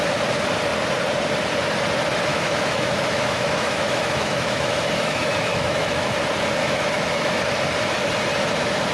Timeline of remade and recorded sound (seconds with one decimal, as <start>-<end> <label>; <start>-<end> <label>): 0.0-2.3 recorded; 2.3-6.1 remade; 6.1-6.6 recorded; 6.6-7.4 remade; 7.4-8.9 recorded

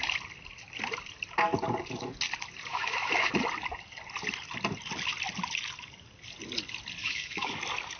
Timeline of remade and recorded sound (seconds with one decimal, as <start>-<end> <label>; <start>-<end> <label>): 0.0-2.7 recorded; 2.7-3.3 remade; 3.3-7.0 recorded; 7.0-7.6 remade; 7.6-8.0 recorded

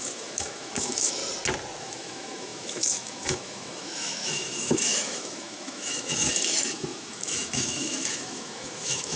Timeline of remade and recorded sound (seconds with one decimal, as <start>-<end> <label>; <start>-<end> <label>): 0.0-1.2 remade; 1.2-1.8 recorded; 1.8-9.2 remade

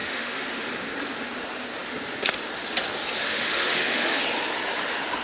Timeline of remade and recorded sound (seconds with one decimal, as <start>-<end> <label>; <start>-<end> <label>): 0.0-0.7 remade; 0.7-3.2 recorded; 3.2-4.2 remade; 4.2-5.2 recorded

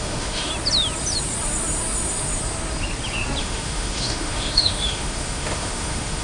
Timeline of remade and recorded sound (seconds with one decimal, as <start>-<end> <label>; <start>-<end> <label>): 0.0-0.5 remade; 0.5-3.4 recorded; 3.4-6.2 remade

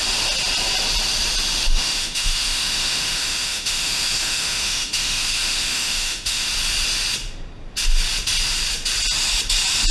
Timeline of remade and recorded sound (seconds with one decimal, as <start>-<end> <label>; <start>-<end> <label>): 0.0-1.7 recorded; 1.7-6.5 remade; 6.5-9.9 recorded

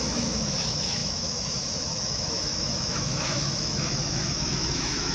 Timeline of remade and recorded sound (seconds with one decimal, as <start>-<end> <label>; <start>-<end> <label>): 0.0-5.1 remade

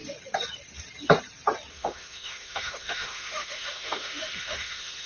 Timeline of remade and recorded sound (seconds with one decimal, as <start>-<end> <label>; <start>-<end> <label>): 0.0-1.7 recorded; 1.7-5.1 remade